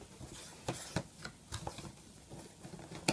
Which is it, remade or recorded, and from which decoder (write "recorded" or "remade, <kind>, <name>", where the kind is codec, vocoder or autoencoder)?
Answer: recorded